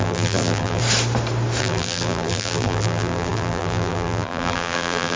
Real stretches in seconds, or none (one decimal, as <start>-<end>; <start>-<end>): 0.8-1.6